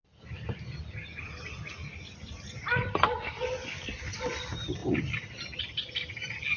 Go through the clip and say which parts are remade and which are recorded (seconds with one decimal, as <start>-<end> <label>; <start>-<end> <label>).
0.0-6.6 recorded